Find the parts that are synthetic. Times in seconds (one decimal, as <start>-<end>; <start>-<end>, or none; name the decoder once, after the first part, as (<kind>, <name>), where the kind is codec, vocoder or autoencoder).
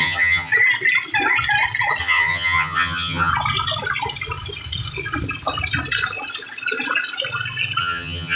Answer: 0.0-0.5 (vocoder, HiFi-GAN); 2.0-3.3; 7.8-8.4